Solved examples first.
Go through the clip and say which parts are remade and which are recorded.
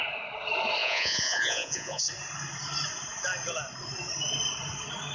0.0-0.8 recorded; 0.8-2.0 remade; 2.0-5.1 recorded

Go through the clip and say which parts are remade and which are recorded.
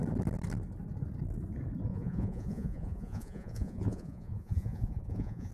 0.0-1.9 recorded; 1.9-5.5 remade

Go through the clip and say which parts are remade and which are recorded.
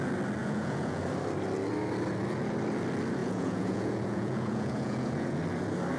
0.0-0.4 recorded; 0.4-1.0 remade; 1.0-3.2 recorded; 3.2-5.4 remade; 5.4-6.0 recorded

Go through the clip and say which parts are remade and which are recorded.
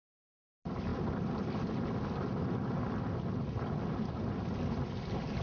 0.0-5.4 recorded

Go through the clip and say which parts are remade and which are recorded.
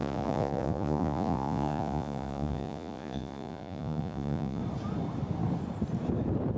0.0-4.6 remade; 4.6-6.6 recorded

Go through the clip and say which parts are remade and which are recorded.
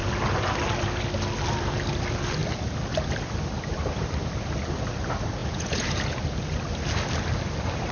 0.0-5.4 recorded; 5.4-6.2 remade; 6.2-7.9 recorded